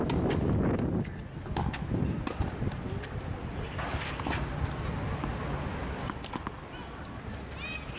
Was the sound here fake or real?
real